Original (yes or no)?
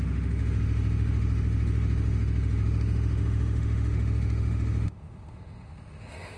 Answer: no